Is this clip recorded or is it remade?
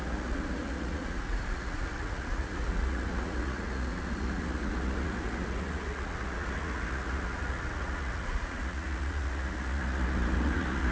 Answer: remade